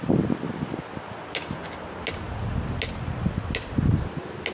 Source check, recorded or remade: recorded